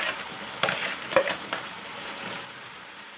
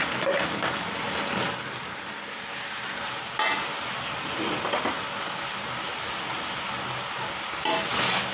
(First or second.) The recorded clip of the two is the second